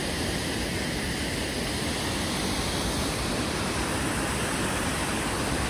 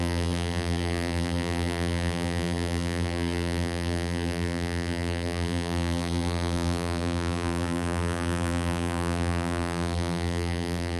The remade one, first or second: second